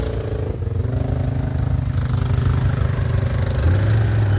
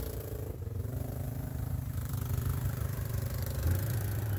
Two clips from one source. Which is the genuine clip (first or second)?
first